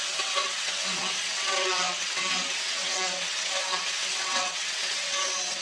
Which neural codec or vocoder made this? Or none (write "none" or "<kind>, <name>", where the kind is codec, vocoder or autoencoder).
vocoder, WaveNeXt